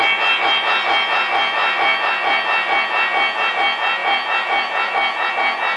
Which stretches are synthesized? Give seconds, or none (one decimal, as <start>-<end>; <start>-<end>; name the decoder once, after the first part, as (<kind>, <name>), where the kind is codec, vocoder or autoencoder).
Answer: none